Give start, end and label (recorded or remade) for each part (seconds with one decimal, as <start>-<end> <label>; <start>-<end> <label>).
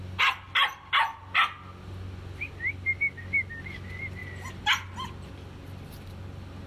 0.0-6.7 recorded